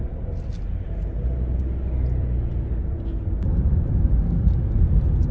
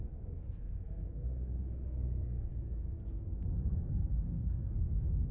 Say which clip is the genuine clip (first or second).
first